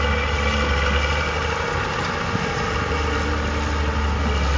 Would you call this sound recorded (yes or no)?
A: yes